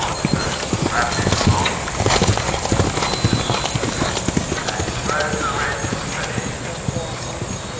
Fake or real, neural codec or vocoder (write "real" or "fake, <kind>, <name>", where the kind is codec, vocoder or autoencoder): real